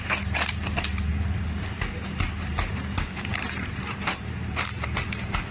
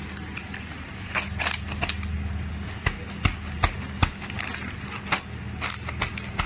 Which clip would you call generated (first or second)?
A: first